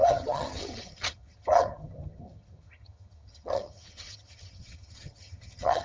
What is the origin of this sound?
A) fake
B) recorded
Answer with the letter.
A